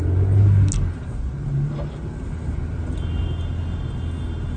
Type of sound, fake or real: real